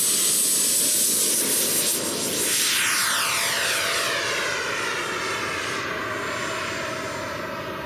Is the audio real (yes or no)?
yes